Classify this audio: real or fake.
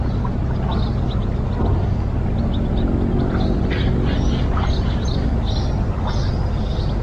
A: real